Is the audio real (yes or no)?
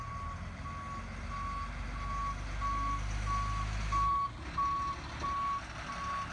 yes